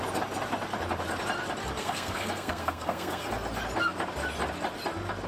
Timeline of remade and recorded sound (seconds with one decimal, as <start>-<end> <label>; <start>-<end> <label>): 0.0-1.8 recorded; 1.8-3.3 remade; 3.3-5.3 recorded